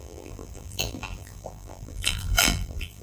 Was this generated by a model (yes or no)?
yes